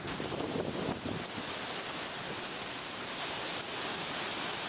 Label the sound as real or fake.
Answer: real